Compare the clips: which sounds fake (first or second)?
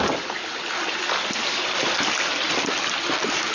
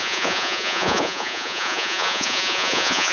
second